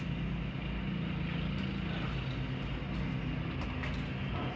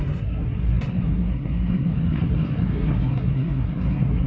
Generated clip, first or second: second